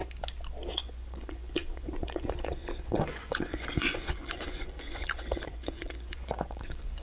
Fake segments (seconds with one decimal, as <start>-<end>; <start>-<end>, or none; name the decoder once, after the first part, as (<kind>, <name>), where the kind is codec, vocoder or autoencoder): 0.7-7.0 (vocoder, Vocos)